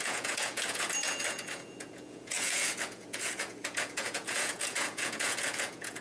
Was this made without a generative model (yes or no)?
no